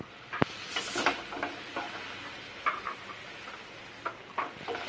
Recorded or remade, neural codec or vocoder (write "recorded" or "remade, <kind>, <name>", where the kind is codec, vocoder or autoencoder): recorded